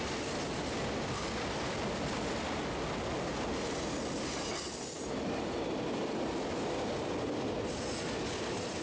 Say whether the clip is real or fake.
real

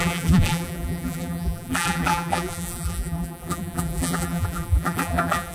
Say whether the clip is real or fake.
fake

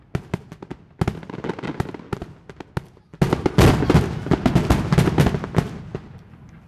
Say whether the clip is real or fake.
real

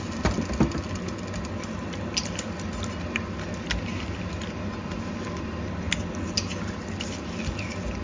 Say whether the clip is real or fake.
real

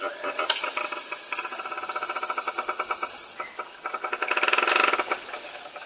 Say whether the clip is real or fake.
real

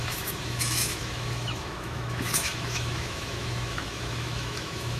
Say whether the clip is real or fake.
fake